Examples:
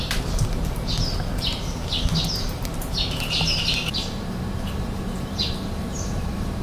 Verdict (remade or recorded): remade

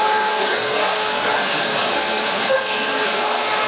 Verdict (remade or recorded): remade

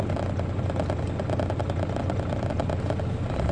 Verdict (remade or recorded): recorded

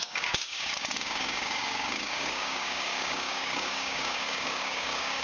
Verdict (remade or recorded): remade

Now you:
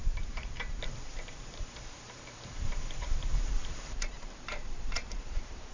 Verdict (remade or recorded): remade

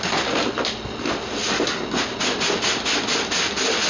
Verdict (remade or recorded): recorded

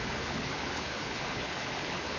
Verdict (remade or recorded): remade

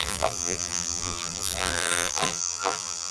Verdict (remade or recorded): remade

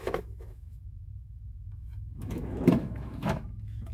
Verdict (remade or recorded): remade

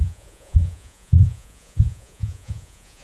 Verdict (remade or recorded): remade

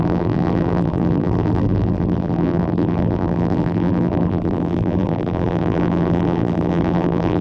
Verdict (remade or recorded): remade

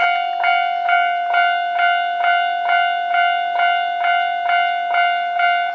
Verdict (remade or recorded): recorded